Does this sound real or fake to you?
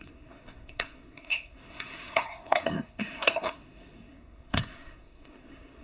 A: fake